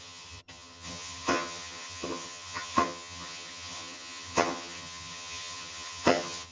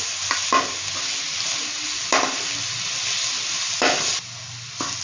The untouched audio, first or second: second